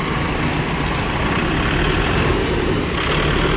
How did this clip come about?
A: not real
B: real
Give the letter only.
B